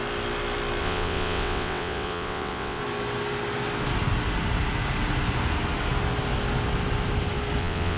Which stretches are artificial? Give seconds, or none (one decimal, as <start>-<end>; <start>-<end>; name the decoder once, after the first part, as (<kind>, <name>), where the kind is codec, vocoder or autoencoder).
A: 0.8-2.8 (vocoder, WaveNeXt); 7.6-8.0

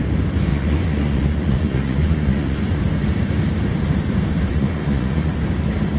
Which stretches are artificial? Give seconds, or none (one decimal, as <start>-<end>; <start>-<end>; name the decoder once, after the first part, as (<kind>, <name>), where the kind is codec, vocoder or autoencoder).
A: 0.5-2.8 (vocoder, Vocos); 4.5-5.3

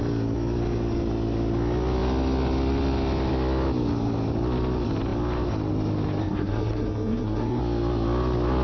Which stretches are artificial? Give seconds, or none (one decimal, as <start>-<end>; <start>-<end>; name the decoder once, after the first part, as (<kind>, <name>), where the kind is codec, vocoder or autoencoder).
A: 6.2-7.6 (codec, SNAC)

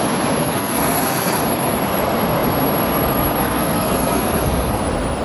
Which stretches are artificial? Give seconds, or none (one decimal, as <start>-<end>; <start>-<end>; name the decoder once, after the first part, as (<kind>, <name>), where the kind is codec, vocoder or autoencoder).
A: 0.4-1.4 (codec, SNAC); 3.4-4.8

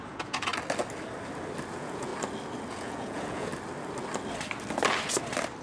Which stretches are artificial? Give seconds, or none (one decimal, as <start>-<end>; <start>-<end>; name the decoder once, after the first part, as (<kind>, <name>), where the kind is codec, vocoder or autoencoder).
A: 0.0-0.5 (vocoder, Vocos); 1.7-2.1; 2.7-3.5